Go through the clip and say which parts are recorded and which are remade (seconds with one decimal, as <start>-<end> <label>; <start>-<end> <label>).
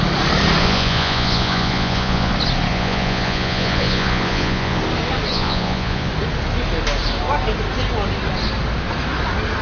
0.0-0.6 recorded; 0.6-2.3 remade; 2.3-2.7 recorded; 2.7-4.8 remade; 4.8-5.3 recorded; 5.3-6.1 remade; 6.1-9.6 recorded